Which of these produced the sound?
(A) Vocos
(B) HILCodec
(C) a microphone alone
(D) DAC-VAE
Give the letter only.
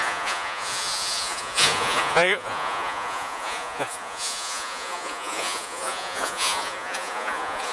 A